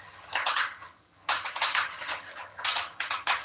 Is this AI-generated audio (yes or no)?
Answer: yes